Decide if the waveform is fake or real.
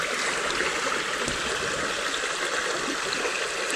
real